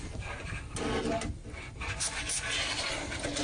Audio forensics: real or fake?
real